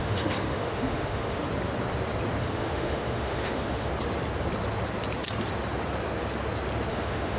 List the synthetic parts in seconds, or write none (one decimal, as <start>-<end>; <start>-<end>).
0.0-1.4; 2.4-3.9; 6.9-7.4